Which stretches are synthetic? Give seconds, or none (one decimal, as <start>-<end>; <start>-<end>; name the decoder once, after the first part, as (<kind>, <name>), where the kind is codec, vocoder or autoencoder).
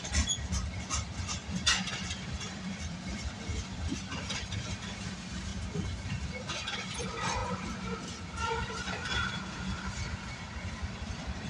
0.0-5.5 (vocoder, BigVGAN v2); 6.1-7.4; 8.1-11.5